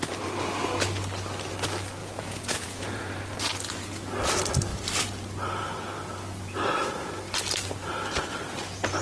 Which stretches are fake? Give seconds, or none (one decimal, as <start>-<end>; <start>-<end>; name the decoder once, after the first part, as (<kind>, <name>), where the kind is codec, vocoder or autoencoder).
2.0-3.0 (vocoder, Vocos)